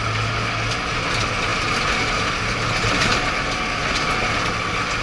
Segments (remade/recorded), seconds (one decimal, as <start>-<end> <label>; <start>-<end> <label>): 0.0-5.0 recorded

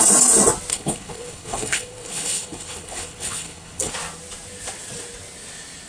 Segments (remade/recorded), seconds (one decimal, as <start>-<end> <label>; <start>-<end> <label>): 0.0-0.7 recorded; 0.7-3.9 remade; 3.9-5.9 recorded